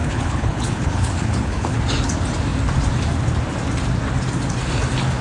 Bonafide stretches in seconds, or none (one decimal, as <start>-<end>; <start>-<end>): 1.8-5.2